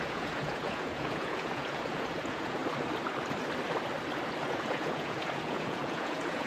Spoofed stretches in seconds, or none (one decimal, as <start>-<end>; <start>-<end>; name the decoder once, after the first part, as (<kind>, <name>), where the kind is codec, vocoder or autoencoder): 0.0-2.6 (vocoder, Vocos); 4.5-6.5